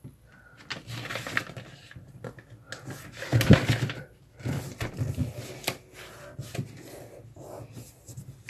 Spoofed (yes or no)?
no